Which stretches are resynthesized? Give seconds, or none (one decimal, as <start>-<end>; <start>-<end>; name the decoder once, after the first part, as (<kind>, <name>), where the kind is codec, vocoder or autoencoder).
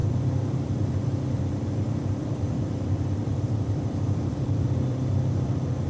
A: 0.0-5.9 (vocoder, BigVGAN v2)